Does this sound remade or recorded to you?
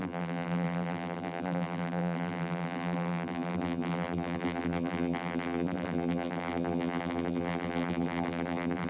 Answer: remade